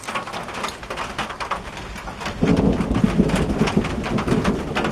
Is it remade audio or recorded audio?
recorded